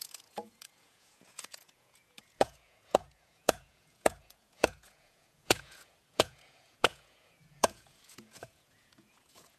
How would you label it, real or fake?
fake